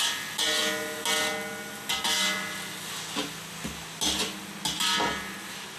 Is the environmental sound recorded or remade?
recorded